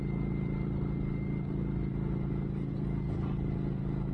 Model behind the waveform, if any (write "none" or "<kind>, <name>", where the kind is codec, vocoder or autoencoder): none